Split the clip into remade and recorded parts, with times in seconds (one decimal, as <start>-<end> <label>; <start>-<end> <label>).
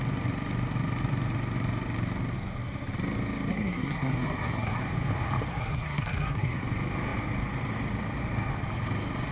0.0-3.5 recorded; 3.5-4.8 remade; 4.8-5.5 recorded; 5.5-6.6 remade; 6.6-9.3 recorded